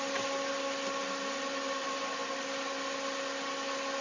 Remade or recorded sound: recorded